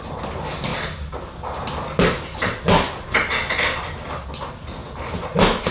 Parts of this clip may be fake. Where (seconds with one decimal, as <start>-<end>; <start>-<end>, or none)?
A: none